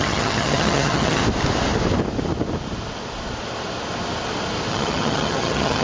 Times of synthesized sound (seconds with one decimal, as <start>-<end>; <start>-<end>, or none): 0.0-1.2; 4.7-5.8